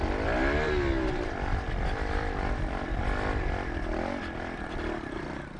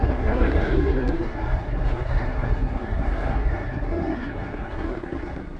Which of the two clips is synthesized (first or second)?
second